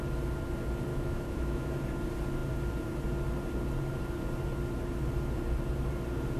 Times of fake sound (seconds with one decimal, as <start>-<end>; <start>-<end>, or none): 0.9-1.7